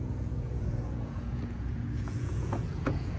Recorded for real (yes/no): no